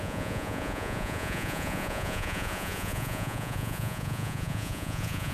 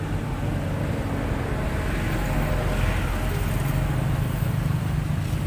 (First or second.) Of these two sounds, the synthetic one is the first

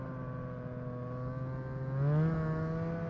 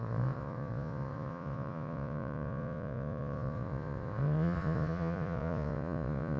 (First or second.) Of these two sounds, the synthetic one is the second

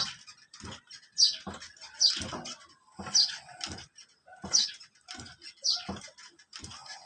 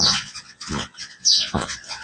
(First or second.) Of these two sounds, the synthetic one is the second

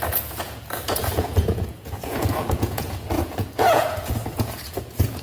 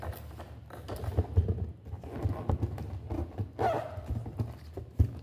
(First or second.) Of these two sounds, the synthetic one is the first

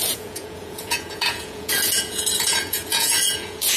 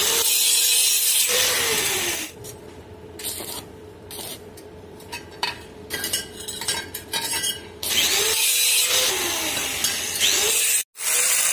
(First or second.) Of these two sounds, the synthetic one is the first